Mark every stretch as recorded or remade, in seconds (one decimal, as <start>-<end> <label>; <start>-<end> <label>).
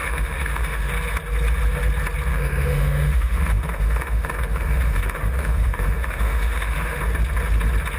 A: 0.0-0.9 remade; 0.9-2.3 recorded; 2.3-7.0 remade; 7.0-8.0 recorded